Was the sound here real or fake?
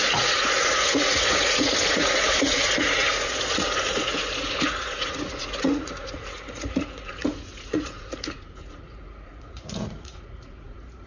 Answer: fake